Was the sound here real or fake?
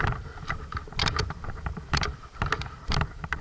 fake